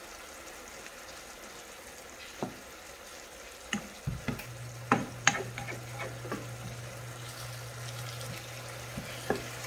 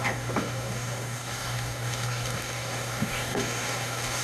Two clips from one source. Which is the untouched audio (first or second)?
first